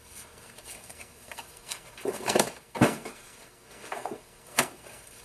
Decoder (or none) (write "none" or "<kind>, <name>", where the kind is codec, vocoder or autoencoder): codec, SNAC